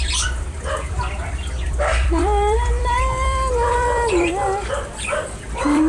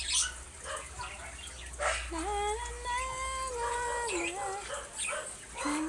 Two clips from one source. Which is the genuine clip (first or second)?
second